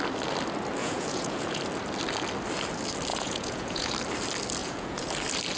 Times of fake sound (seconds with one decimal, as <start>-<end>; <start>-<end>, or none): 0.8-1.6; 3.1-3.9; 4.6-5.1

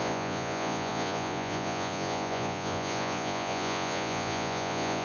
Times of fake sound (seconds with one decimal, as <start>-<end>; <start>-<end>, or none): 0.0-5.0